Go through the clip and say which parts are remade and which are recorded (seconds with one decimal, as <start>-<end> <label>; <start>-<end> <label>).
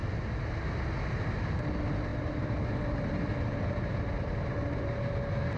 0.0-2.1 recorded; 2.1-5.0 remade; 5.0-5.6 recorded